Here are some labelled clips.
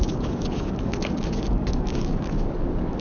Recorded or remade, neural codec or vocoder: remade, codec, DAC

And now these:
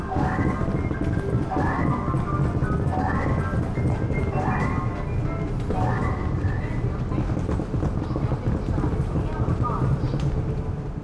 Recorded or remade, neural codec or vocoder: recorded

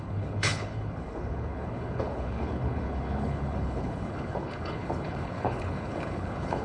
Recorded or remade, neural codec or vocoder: remade, codec, HILCodec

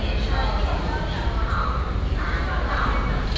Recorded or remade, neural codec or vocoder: recorded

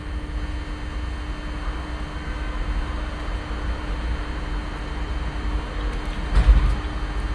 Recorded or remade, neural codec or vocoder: recorded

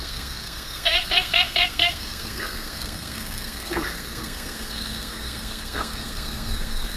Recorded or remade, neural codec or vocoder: remade, codec, SNAC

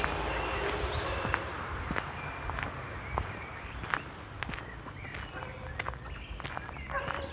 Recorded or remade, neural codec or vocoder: recorded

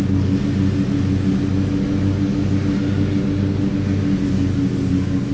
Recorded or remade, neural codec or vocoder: recorded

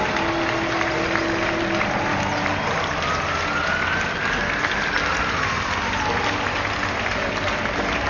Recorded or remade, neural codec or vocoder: recorded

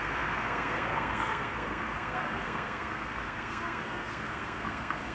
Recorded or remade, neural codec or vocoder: remade, codec, SNAC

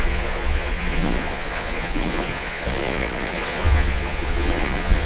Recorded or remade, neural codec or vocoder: remade, vocoder, Vocos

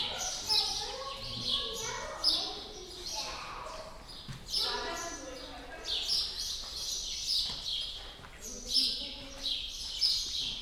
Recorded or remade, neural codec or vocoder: recorded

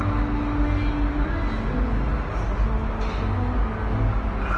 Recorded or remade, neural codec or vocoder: recorded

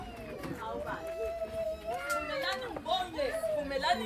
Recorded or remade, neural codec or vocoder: recorded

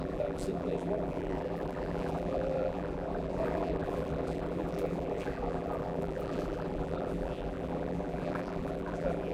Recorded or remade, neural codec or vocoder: remade, vocoder, BigVGAN v2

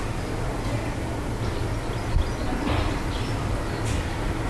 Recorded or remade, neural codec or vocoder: recorded